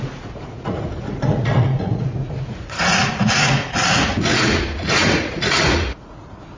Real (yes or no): no